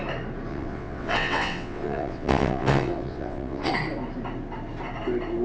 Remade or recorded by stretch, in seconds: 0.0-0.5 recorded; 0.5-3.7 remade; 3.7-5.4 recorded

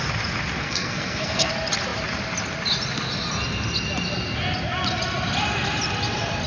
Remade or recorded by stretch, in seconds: 0.0-0.6 recorded; 0.6-1.5 remade; 1.5-6.5 recorded

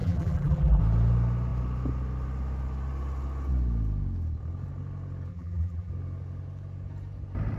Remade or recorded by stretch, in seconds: 0.0-0.8 remade; 0.8-5.3 recorded; 5.3-5.9 remade; 5.9-7.6 recorded

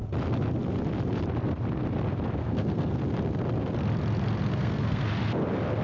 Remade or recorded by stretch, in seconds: 0.0-2.4 recorded; 2.4-3.0 remade; 3.0-4.5 recorded; 4.5-5.1 remade; 5.1-5.8 recorded

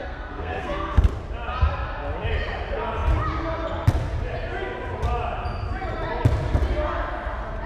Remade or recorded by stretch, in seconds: 0.0-1.1 remade; 1.1-7.7 recorded